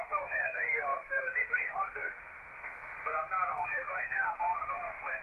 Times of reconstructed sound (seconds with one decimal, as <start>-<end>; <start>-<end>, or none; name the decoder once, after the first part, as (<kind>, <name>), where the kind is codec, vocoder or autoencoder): 0.0-2.9 (autoencoder, DAC-VAE); 3.5-5.2